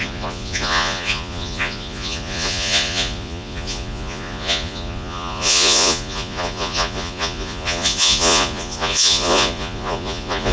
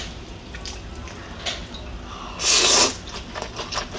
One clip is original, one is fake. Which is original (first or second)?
second